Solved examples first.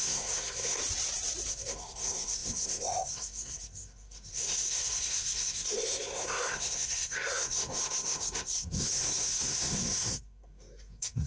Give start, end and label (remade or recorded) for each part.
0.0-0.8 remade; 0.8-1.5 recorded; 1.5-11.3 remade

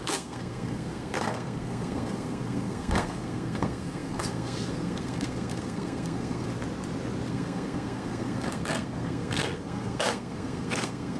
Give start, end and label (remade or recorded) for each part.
0.0-6.5 remade; 6.5-7.3 recorded; 7.3-11.2 remade

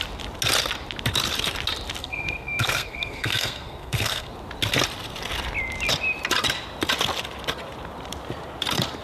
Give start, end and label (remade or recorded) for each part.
0.0-2.0 recorded; 2.0-4.3 remade; 4.3-9.0 recorded

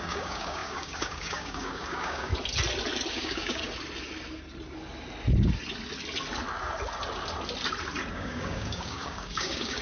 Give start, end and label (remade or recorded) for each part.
0.0-2.3 remade; 2.3-3.1 recorded; 3.1-3.6 remade; 3.6-8.1 recorded; 8.1-9.8 remade